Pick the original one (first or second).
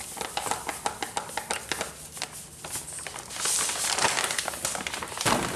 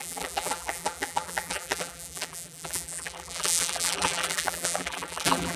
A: first